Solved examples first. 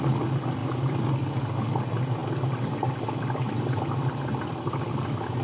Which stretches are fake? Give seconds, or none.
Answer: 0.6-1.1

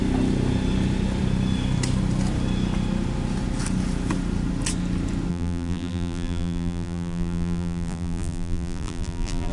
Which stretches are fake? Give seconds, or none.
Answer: 5.3-9.5

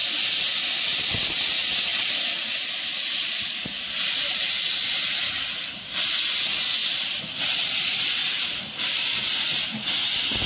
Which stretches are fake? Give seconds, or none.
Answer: 8.2-8.9

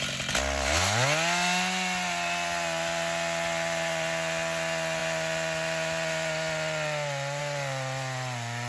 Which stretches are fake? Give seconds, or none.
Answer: none